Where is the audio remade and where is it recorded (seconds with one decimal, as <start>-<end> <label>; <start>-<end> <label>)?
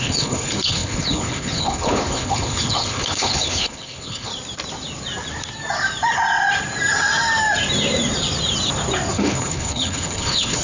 0.0-4.3 remade; 4.3-9.1 recorded; 9.1-10.6 remade